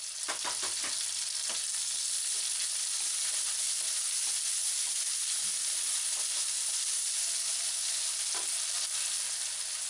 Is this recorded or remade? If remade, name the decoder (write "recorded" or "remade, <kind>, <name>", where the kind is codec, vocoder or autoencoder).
recorded